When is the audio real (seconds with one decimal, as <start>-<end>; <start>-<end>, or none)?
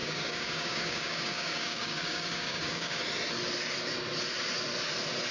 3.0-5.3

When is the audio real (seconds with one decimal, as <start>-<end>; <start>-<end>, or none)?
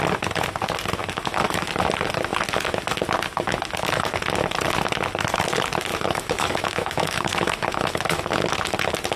0.0-1.0; 1.7-5.9; 8.2-9.2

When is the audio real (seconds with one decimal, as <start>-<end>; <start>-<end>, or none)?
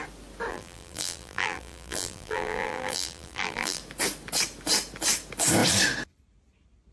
0.0-0.5; 3.8-6.9